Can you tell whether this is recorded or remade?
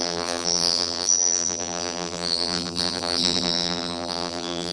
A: remade